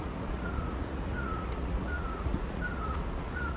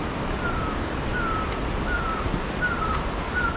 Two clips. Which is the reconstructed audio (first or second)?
first